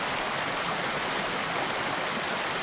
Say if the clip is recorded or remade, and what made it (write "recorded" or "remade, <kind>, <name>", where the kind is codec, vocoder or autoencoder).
recorded